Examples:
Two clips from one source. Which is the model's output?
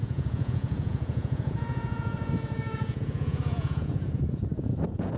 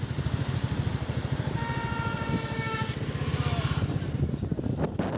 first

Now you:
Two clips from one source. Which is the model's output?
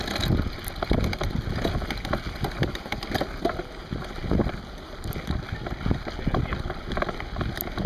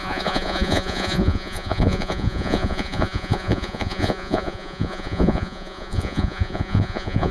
second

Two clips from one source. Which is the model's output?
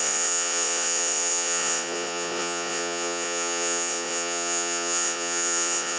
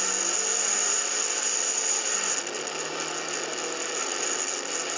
first